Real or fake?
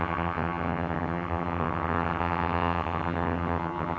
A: fake